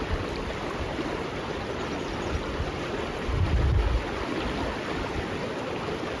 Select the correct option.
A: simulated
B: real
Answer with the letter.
B